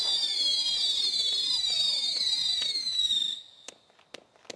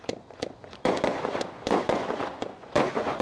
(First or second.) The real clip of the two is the first